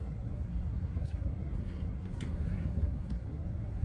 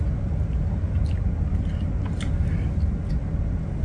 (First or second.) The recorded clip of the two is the second